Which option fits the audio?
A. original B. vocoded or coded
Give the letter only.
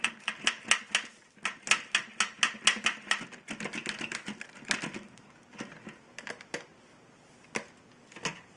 A